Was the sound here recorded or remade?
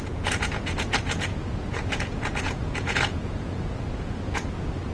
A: remade